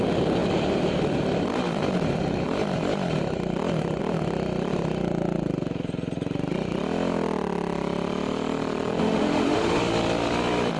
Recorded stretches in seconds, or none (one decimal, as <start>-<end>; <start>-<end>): 0.0-9.0; 9.8-10.8